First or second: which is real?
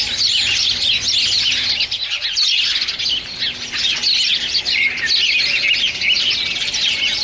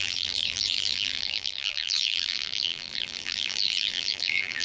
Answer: first